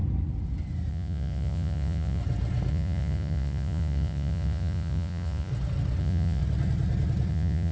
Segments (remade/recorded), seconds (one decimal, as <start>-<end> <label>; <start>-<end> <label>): 0.0-0.9 recorded; 0.9-2.2 remade; 2.2-2.7 recorded; 2.7-5.5 remade; 5.5-6.0 recorded; 6.0-6.4 remade; 6.4-7.3 recorded; 7.3-7.7 remade